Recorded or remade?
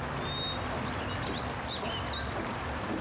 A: recorded